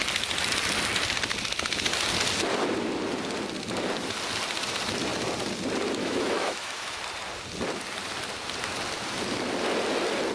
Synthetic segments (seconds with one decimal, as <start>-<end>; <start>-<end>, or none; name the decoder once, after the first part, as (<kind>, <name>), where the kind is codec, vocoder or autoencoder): 6.0-7.0 (autoencoder, DAC-VAE)